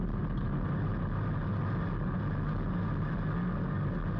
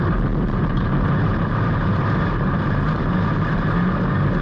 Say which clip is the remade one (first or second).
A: second